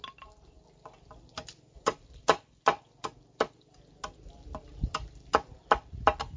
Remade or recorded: recorded